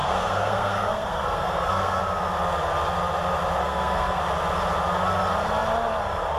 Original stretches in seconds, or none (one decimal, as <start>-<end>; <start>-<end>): 2.0-3.6; 4.2-6.4